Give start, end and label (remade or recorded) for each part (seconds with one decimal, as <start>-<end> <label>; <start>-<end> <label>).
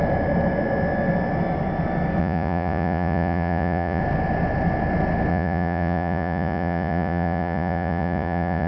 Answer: 0.0-2.2 recorded; 2.2-4.0 remade; 4.0-5.3 recorded; 5.3-8.7 remade